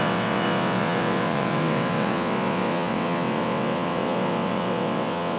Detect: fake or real fake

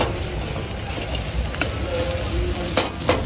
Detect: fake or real real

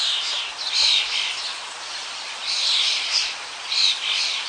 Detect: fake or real real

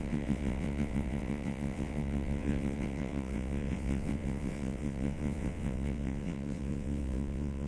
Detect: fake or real fake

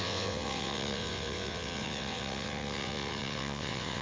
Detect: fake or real fake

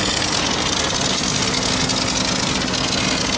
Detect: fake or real real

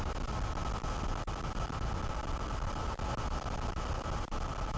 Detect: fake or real real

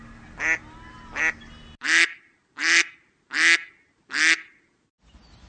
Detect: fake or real real